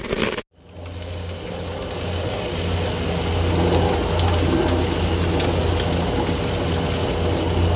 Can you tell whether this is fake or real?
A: real